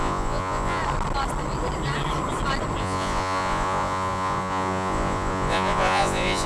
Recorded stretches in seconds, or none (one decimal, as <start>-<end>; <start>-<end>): 0.8-2.8